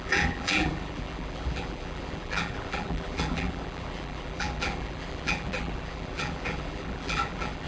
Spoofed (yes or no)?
yes